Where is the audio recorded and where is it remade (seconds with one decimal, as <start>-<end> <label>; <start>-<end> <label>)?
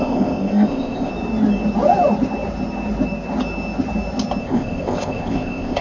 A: 0.0-1.1 remade; 1.1-4.4 recorded; 4.4-5.8 remade